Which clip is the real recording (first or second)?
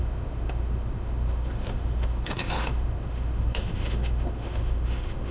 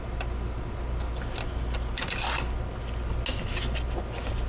second